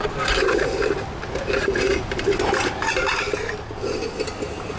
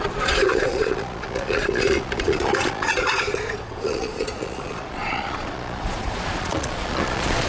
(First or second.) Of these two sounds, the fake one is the second